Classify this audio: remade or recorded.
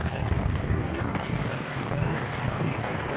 remade